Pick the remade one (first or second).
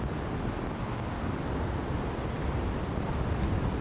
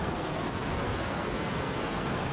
second